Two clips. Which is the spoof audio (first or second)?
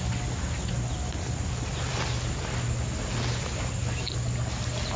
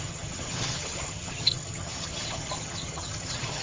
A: second